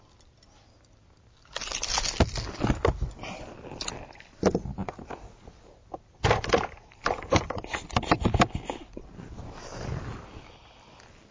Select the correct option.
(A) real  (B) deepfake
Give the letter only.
A